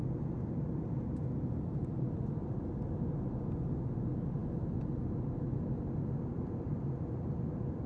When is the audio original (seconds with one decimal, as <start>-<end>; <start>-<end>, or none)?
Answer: 0.0-7.9